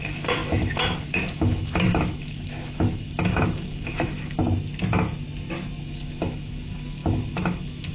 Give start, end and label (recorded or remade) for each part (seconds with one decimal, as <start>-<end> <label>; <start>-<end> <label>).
0.0-4.4 remade; 4.4-5.8 recorded; 5.8-7.9 remade